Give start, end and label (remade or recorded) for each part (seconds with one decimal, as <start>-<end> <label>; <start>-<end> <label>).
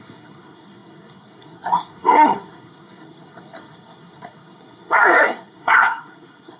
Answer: 0.0-6.6 remade